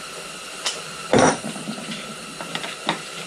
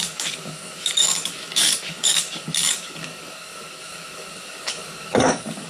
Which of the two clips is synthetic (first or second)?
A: second